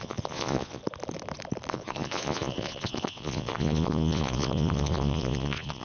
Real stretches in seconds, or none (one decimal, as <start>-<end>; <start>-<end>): 0.8-1.7